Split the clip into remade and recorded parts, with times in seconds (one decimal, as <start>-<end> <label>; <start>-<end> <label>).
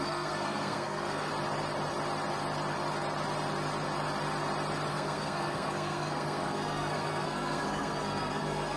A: 0.0-1.3 remade; 1.3-4.9 recorded; 4.9-8.8 remade